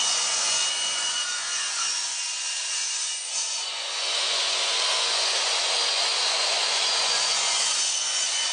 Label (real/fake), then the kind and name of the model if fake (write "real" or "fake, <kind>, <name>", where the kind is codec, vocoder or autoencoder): fake, vocoder, Vocos